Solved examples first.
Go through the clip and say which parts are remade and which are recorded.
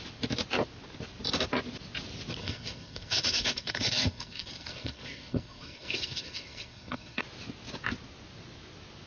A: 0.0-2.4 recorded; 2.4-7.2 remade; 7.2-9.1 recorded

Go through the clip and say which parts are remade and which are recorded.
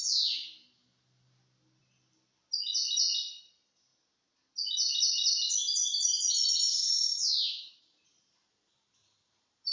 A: 0.0-9.7 recorded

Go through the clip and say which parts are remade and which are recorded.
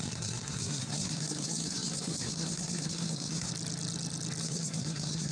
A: 0.0-3.5 remade; 3.5-4.4 recorded; 4.4-5.3 remade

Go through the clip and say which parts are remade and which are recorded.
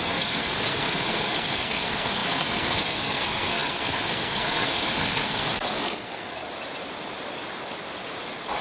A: 0.0-6.4 remade; 6.4-8.6 recorded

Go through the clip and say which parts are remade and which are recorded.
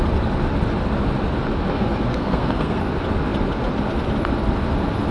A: 0.0-1.7 recorded; 1.7-2.8 remade; 2.8-5.1 recorded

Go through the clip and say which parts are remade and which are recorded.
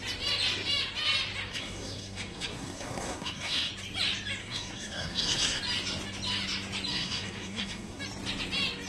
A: 0.0-1.5 recorded; 1.5-3.7 remade; 3.7-4.4 recorded; 4.4-5.6 remade; 5.6-6.9 recorded; 6.9-8.0 remade; 8.0-8.9 recorded